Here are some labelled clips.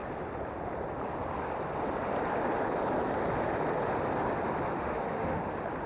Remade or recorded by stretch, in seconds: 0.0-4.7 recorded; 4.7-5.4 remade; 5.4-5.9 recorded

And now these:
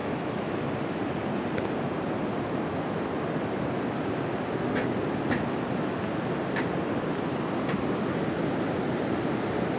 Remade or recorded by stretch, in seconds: 0.0-0.6 remade; 0.6-9.8 recorded